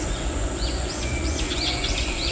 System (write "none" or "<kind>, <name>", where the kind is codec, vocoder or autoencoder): vocoder, Vocos